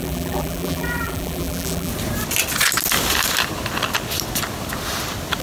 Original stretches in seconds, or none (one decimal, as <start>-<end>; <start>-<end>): 1.9-5.4